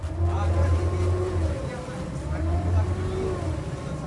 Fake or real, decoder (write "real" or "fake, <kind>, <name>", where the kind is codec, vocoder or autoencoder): real